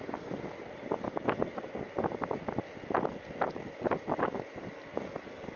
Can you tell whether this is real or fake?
real